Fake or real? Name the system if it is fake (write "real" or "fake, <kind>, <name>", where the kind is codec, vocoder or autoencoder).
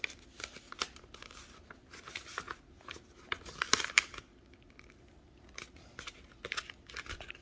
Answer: real